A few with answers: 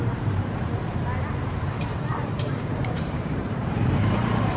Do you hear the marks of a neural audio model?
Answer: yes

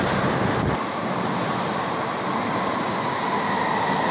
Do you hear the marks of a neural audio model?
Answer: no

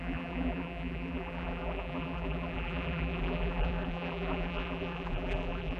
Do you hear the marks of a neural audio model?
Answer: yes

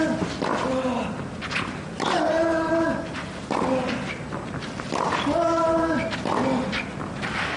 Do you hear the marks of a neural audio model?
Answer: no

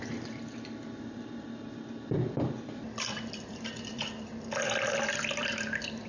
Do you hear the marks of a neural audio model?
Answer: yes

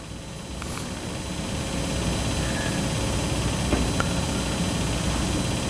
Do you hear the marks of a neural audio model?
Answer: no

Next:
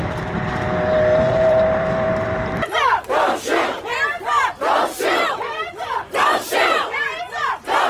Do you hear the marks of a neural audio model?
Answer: yes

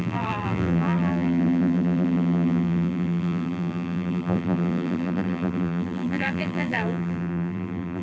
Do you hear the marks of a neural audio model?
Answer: yes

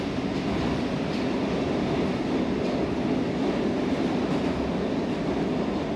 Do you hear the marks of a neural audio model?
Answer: no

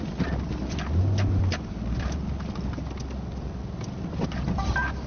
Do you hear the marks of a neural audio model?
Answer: no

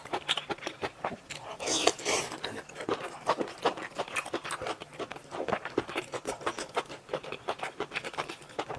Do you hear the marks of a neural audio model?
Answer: yes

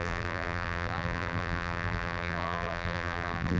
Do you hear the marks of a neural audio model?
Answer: yes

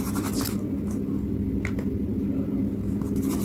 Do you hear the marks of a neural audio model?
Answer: no